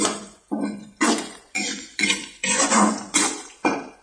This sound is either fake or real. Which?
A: fake